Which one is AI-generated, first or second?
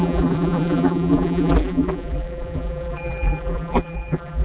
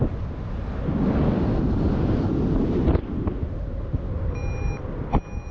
first